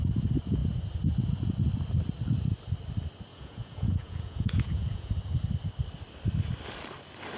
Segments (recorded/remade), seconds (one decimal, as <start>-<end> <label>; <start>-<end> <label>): 0.0-3.3 recorded; 3.3-5.1 remade; 5.1-7.4 recorded